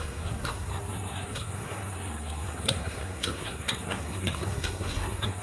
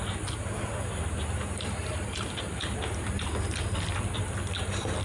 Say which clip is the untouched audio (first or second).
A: second